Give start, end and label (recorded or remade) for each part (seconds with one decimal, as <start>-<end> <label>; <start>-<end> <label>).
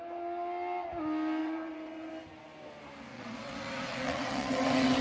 0.0-1.4 recorded; 1.4-2.1 remade; 2.1-3.1 recorded; 3.1-5.0 remade